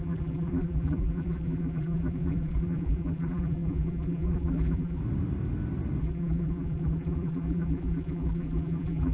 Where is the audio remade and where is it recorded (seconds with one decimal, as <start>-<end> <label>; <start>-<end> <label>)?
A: 0.0-5.0 remade; 5.0-6.0 recorded; 6.0-9.1 remade